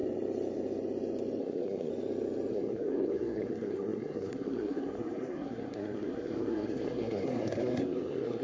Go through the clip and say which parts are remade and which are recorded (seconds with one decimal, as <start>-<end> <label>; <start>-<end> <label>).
0.0-1.4 recorded; 1.4-1.9 remade; 1.9-2.5 recorded; 2.5-8.4 remade